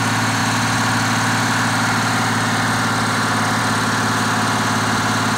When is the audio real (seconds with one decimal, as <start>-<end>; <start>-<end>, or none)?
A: 0.0-5.4